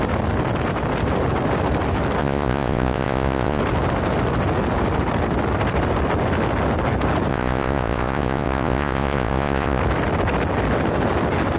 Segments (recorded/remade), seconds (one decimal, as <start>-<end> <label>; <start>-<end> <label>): 0.0-2.2 recorded; 2.2-3.6 remade; 3.6-7.3 recorded; 7.3-9.8 remade; 9.8-11.6 recorded